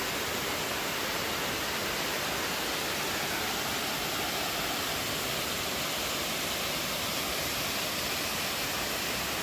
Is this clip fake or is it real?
real